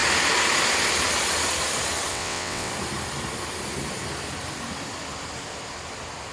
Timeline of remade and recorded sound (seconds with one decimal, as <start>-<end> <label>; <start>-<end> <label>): 0.0-2.1 recorded; 2.1-2.7 remade; 2.7-6.3 recorded